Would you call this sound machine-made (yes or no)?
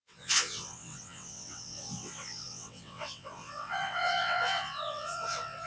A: yes